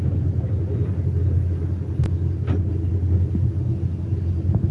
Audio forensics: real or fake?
real